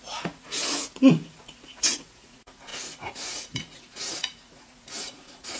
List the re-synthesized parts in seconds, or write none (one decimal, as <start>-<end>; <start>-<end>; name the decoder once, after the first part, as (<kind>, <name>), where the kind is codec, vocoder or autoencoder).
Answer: 0.0-5.6 (vocoder, Vocos)